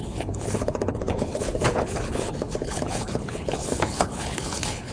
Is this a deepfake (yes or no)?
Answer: yes